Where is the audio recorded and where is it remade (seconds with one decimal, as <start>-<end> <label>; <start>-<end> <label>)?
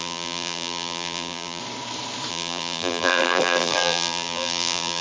0.0-1.6 remade; 1.6-2.3 recorded; 2.3-5.0 remade